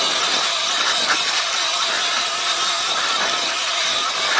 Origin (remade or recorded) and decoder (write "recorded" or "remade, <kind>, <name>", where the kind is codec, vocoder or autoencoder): recorded